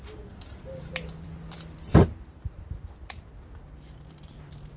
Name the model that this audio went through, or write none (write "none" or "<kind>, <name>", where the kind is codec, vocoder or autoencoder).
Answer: vocoder, BigVGAN v2